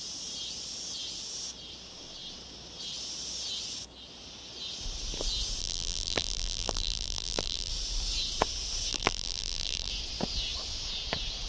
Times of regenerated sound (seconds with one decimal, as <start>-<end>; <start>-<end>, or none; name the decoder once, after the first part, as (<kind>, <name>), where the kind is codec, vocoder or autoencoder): 5.6-7.7 (vocoder, BigVGAN v2); 8.9-9.9